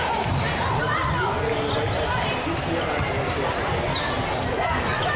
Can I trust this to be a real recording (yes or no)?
yes